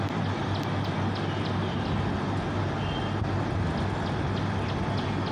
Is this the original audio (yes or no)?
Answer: yes